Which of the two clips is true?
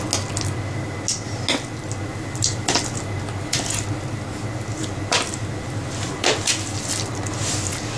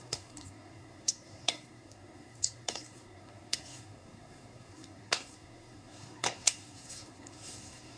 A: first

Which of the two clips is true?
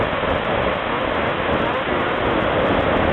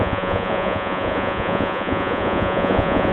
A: first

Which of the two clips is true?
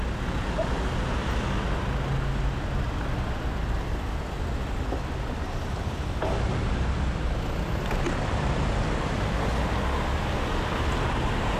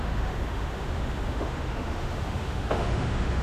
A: first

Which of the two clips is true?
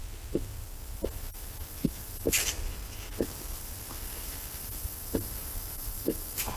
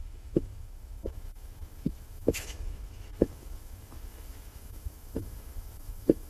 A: first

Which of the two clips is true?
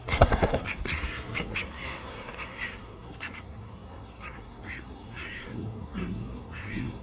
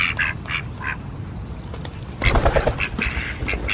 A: second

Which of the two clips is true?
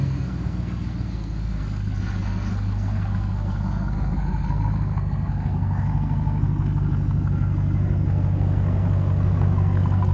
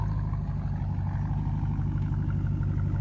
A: second